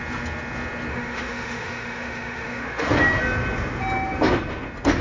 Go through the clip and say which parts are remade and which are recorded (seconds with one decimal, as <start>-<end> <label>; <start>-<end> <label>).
0.0-0.9 recorded; 0.9-3.0 remade; 3.0-5.0 recorded